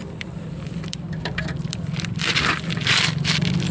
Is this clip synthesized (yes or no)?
yes